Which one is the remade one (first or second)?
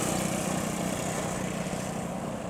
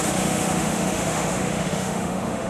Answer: second